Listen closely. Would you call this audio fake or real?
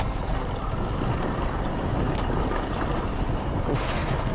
real